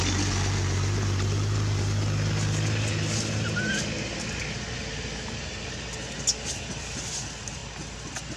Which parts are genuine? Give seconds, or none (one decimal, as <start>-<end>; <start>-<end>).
0.0-8.4